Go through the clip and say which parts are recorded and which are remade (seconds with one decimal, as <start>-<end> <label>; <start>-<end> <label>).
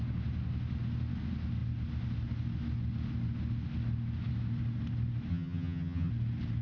0.0-5.3 recorded; 5.3-6.1 remade; 6.1-6.6 recorded